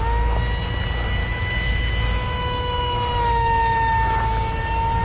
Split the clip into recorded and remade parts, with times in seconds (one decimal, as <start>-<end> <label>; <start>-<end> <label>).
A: 0.0-1.2 recorded; 1.2-4.2 remade; 4.2-5.0 recorded